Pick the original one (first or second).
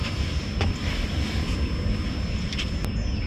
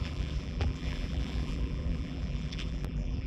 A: first